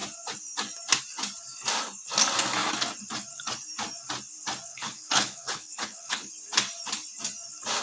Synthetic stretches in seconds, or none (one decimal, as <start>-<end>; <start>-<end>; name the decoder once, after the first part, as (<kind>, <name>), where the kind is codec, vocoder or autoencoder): 4.7-6.3 (codec, HILCodec)